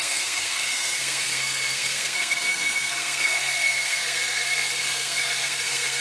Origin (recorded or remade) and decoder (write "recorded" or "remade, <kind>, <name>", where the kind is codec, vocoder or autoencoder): remade, codec, SNAC